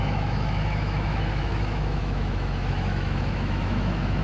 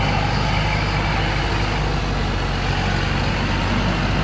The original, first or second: second